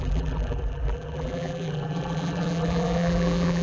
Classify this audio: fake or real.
fake